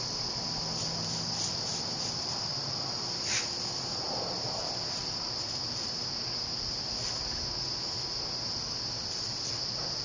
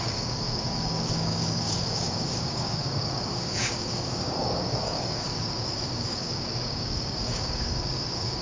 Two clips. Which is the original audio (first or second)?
first